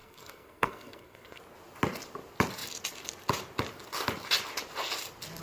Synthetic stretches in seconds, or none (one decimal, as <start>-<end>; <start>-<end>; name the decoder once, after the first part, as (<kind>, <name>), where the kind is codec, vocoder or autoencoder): 0.0-1.4 (codec, SNAC)